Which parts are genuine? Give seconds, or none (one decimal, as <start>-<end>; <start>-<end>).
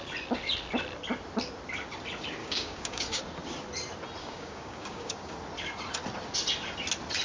0.0-2.4; 3.2-4.2; 5.3-7.2